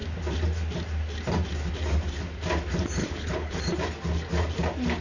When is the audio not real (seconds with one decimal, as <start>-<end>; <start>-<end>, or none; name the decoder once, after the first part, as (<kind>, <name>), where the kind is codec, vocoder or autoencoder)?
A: 3.0-3.6 (codec, HILCodec)